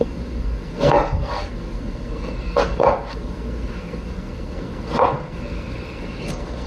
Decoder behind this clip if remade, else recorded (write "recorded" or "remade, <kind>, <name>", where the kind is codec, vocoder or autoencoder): remade, codec, SNAC